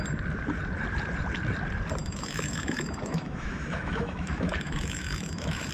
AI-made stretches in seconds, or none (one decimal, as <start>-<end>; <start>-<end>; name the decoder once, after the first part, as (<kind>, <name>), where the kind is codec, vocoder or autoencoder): 2.0-5.7 (autoencoder, DAC-VAE)